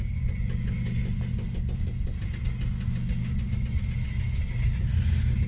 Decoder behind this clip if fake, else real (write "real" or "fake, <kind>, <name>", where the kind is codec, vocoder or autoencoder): real